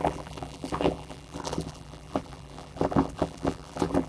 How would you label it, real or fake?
fake